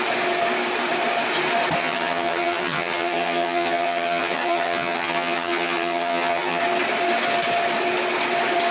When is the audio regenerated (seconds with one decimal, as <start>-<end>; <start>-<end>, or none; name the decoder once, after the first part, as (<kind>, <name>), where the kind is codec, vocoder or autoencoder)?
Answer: 1.8-6.6 (vocoder, HiFi-GAN)